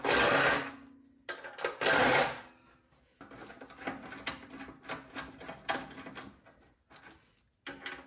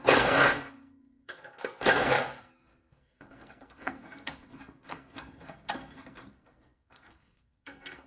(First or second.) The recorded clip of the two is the first